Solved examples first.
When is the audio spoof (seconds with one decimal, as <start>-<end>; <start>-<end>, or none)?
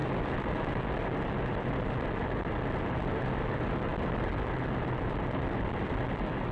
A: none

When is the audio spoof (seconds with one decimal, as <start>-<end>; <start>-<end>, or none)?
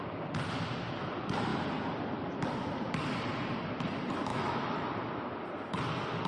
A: 4.3-4.9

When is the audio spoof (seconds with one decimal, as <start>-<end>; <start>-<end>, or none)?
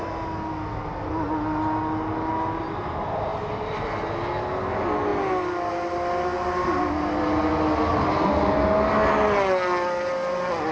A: none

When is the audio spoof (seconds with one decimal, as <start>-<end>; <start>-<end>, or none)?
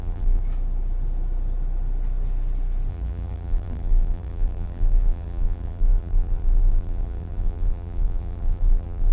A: 0.0-0.4; 2.9-9.1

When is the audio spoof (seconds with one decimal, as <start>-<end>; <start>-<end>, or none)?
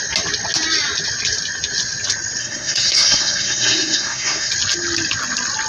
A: 2.4-4.5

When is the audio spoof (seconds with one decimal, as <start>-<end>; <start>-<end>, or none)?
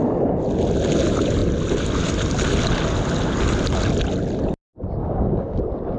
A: 5.0-5.6